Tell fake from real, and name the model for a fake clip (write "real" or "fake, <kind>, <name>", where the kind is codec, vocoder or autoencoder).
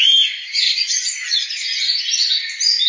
real